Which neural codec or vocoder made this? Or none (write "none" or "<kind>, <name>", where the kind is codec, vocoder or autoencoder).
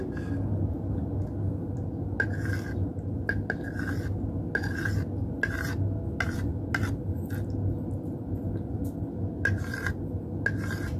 none